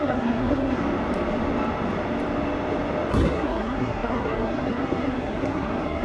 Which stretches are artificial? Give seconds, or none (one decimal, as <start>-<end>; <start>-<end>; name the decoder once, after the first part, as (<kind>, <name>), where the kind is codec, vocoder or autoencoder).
0.0-0.8 (codec, SNAC); 3.1-6.0